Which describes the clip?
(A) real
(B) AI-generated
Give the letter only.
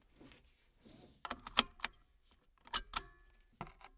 A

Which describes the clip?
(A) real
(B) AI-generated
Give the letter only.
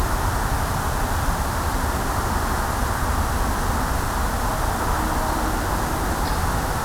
A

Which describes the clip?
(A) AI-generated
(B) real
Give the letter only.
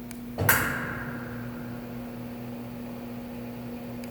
B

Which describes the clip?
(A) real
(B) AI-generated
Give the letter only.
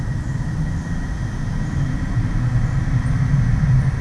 A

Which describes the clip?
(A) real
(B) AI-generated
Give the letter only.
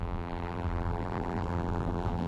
B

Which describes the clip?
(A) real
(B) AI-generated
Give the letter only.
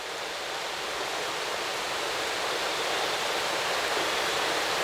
A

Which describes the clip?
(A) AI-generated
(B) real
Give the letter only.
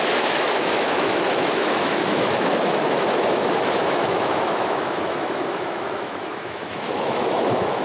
A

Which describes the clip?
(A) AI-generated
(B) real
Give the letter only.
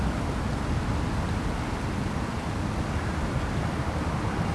B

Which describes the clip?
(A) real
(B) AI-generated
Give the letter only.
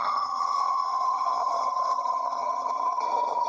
B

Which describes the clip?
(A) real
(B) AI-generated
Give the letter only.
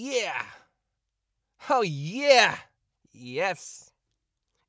A